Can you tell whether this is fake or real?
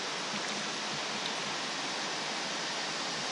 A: real